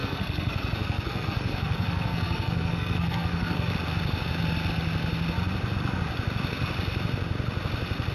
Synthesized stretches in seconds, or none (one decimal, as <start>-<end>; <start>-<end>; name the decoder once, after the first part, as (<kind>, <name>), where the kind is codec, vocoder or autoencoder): 0.0-3.7 (codec, SNAC)